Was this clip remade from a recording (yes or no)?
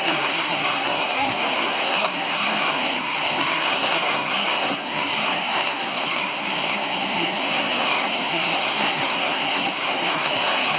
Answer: yes